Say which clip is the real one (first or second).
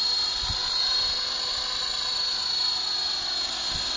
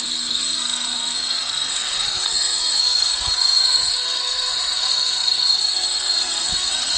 first